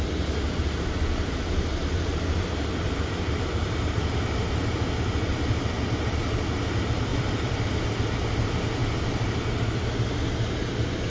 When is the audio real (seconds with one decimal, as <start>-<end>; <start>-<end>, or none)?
0.0-7.1; 8.0-11.1